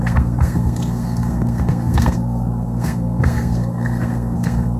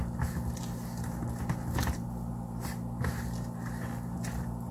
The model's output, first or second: first